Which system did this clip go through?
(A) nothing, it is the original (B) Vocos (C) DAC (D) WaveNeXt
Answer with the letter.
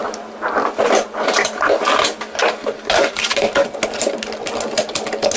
A